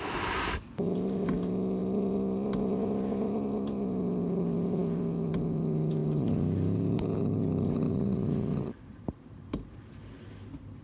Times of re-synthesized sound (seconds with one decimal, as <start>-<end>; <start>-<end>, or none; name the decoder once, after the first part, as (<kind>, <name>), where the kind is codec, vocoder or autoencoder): 6.0-9.8 (vocoder, BigVGAN v2)